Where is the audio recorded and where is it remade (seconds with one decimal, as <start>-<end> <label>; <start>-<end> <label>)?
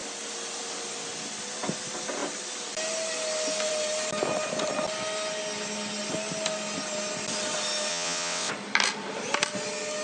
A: 0.0-7.9 recorded; 7.9-8.5 remade; 8.5-10.0 recorded